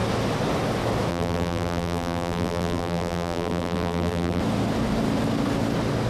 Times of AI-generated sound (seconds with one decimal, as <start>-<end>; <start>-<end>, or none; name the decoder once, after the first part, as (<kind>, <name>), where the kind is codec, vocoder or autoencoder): 1.1-4.4 (vocoder, BigVGAN v2)